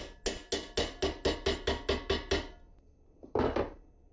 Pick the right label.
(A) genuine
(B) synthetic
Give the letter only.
A